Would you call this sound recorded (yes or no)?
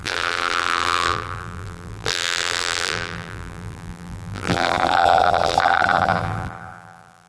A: no